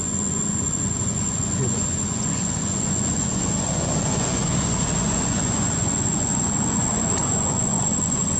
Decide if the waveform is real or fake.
fake